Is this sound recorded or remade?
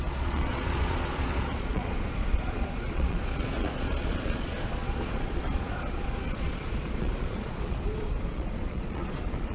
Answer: remade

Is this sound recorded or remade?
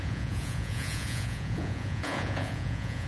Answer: remade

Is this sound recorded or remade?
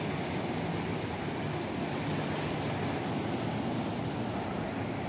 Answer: recorded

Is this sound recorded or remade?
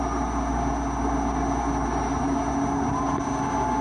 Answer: recorded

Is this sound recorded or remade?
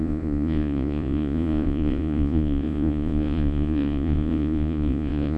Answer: remade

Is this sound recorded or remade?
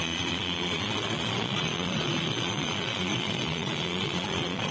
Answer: remade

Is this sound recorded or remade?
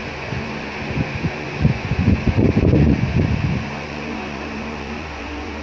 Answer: remade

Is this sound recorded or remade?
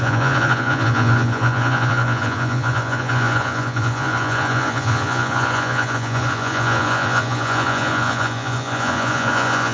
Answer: remade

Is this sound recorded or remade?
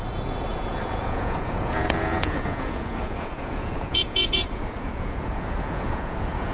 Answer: remade